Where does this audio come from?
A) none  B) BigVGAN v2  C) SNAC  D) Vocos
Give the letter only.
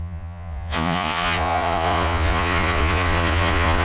D